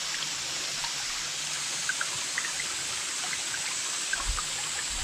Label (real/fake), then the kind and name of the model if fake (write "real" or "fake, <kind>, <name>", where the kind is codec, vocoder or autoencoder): real